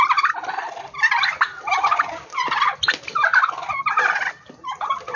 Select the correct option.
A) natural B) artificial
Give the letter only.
A